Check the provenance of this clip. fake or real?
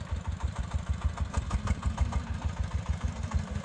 fake